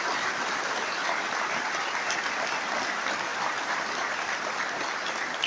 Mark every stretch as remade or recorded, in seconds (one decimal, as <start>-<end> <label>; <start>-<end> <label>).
0.0-3.3 recorded; 3.3-3.8 remade; 3.8-5.5 recorded

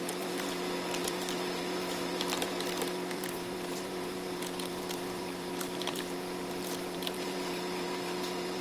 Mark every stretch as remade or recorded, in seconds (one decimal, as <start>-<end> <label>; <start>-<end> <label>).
0.0-8.6 remade

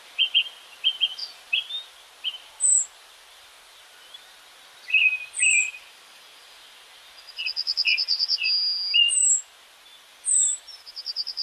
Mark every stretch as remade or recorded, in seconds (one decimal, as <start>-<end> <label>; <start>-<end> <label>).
0.0-11.4 recorded